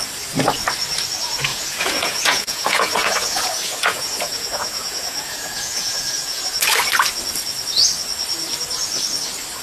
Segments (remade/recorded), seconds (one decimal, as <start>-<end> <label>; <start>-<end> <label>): 0.0-1.5 recorded; 1.5-6.4 remade; 6.4-9.6 recorded